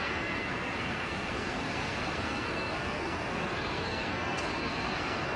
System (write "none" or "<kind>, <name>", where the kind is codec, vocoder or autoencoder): codec, SNAC